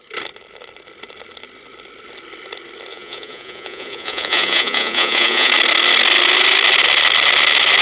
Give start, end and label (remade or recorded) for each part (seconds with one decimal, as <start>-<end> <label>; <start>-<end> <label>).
0.0-2.9 recorded; 2.9-5.5 remade; 5.5-7.8 recorded